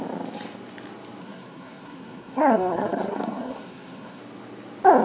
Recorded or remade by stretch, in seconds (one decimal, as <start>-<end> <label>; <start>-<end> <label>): 0.0-1.2 recorded; 1.2-4.2 remade; 4.2-5.0 recorded